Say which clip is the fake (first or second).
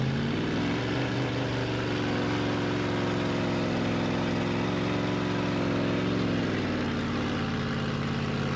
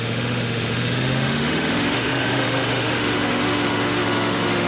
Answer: second